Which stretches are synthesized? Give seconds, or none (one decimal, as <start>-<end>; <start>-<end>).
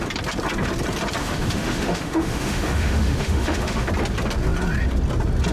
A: 1.2-3.9